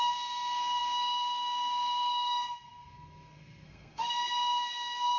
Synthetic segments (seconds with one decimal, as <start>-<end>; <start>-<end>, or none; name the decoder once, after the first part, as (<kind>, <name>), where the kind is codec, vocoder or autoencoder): 0.0-5.2 (codec, SNAC)